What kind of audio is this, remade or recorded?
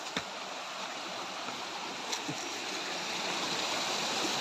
recorded